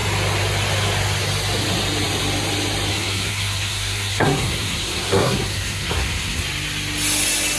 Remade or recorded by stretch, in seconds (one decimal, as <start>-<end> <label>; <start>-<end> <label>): 0.0-2.9 recorded; 2.9-6.4 remade; 6.4-7.6 recorded